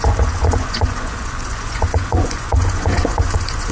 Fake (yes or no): yes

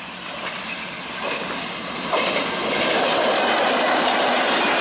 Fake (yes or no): no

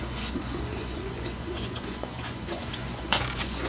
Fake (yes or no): yes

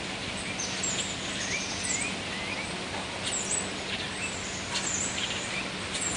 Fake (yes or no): no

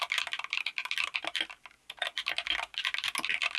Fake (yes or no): no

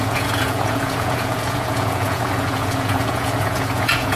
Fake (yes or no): yes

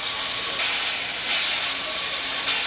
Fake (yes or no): no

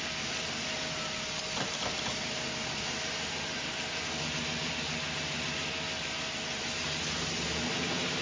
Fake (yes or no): no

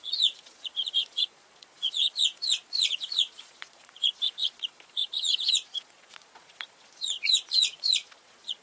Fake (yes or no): yes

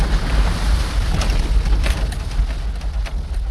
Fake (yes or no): no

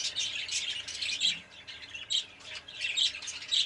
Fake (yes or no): no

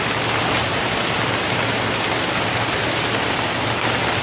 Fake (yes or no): no